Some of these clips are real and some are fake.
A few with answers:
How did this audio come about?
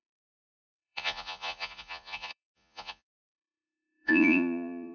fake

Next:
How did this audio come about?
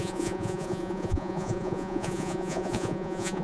fake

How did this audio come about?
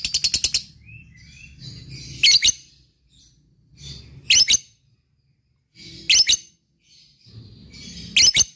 real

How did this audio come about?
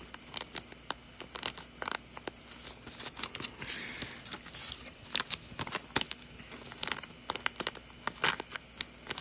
real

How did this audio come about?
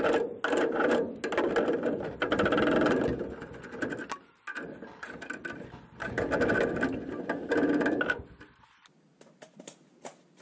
real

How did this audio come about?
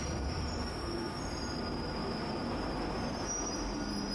real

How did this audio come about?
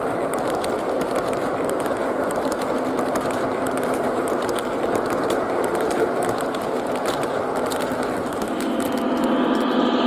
real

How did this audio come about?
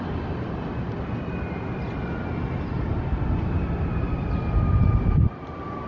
real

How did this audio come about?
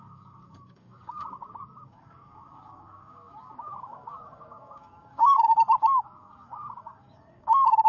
fake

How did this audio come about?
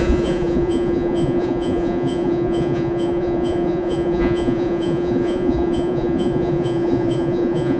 fake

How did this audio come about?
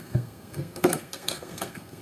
fake